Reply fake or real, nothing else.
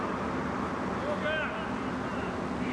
real